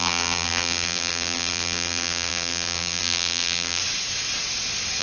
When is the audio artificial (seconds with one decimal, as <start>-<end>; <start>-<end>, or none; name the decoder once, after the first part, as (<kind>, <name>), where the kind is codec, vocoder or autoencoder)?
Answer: 0.0-3.8 (vocoder, BigVGAN v2)